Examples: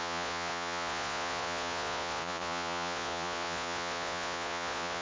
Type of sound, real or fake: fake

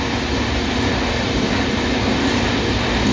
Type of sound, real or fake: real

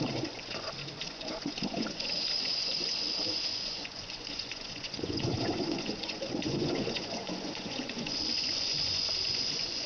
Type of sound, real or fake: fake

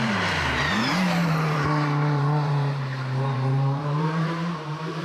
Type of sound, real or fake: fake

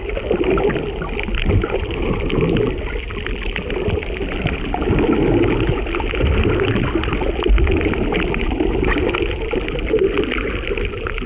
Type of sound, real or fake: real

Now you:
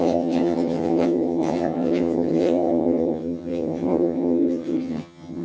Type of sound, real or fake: fake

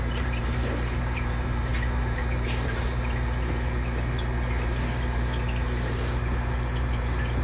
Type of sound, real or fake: fake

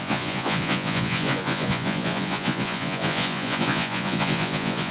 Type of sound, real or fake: fake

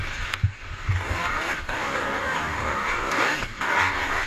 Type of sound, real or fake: fake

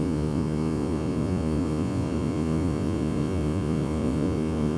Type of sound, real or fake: fake